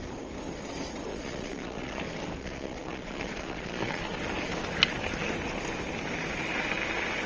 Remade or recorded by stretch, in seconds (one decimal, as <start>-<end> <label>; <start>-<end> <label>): 0.0-1.1 recorded; 1.1-2.0 remade; 2.0-2.4 recorded; 2.4-4.0 remade; 4.0-7.3 recorded